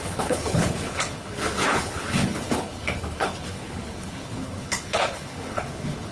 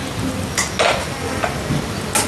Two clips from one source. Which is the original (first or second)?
second